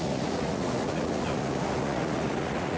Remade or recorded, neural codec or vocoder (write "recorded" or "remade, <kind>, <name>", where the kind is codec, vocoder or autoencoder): remade, vocoder, Vocos